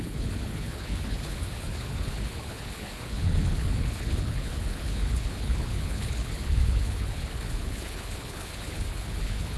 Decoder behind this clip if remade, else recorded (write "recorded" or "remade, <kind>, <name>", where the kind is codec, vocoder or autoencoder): remade, codec, HILCodec